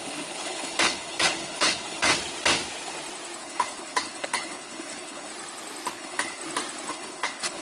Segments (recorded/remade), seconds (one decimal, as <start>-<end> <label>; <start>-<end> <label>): 0.0-2.1 remade; 2.1-3.4 recorded; 3.4-5.3 remade; 5.3-5.9 recorded; 5.9-6.4 remade; 6.4-6.9 recorded; 6.9-7.6 remade